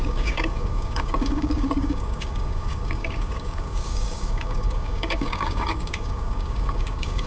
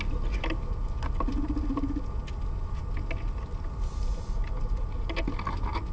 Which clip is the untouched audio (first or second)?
second